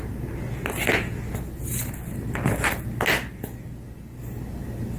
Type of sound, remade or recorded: recorded